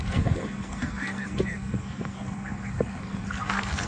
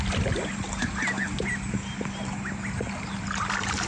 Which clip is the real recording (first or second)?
second